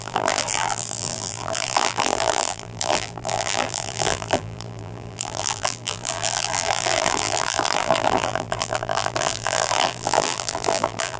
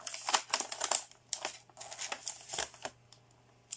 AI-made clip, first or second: first